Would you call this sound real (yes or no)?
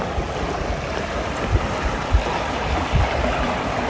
yes